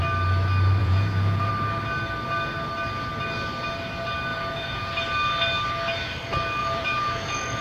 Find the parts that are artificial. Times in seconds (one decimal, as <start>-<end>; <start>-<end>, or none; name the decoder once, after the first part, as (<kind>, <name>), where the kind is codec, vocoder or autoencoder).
0.8-1.5 (vocoder, Vocos); 4.3-4.9; 6.6-7.6